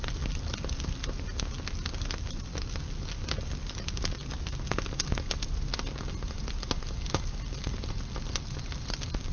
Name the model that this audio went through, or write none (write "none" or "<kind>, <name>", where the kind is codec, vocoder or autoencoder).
none